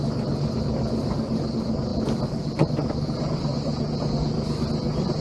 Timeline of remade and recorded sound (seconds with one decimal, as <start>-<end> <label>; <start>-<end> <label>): 0.0-5.2 recorded